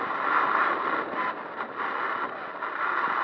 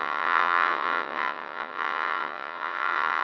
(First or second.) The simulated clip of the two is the second